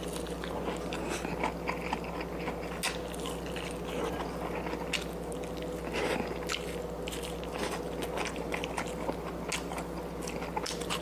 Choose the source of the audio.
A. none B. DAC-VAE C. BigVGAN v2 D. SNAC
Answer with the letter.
A